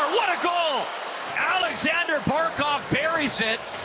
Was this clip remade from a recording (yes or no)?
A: yes